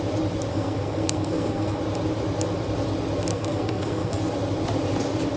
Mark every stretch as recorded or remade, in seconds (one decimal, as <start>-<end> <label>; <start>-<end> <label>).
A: 0.0-0.5 recorded; 0.5-1.8 remade; 1.8-3.3 recorded; 3.3-4.2 remade; 4.2-5.4 recorded